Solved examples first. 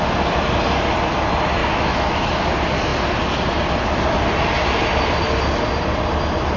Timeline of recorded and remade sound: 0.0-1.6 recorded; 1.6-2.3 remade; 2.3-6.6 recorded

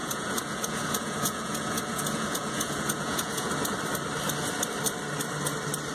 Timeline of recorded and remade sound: 0.0-3.5 remade; 3.5-5.9 recorded

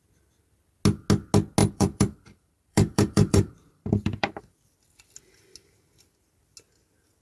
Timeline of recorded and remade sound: 0.0-1.6 recorded; 1.6-4.4 remade; 4.4-7.2 recorded